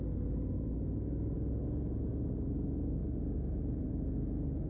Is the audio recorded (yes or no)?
yes